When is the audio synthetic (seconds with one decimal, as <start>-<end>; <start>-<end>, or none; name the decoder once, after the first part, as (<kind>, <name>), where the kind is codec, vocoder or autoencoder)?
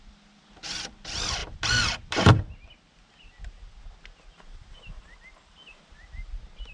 none